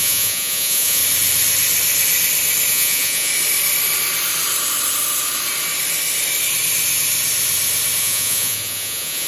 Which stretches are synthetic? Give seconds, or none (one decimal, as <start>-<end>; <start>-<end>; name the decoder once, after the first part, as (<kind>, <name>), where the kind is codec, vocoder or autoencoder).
0.0-1.0 (vocoder, Vocos); 2.7-3.3; 8.0-9.3

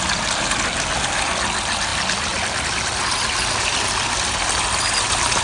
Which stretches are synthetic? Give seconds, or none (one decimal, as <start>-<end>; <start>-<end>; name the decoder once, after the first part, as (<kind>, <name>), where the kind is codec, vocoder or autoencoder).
none

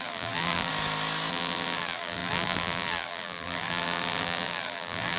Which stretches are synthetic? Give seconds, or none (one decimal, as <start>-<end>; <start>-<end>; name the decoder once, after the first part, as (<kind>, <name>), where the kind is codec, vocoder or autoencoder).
0.0-0.7 (vocoder, BigVGAN v2); 1.3-5.2

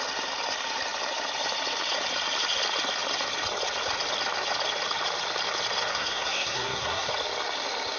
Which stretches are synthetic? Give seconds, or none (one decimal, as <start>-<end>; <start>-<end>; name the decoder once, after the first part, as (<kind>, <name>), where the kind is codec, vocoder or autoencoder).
5.9-7.1 (codec, SNAC)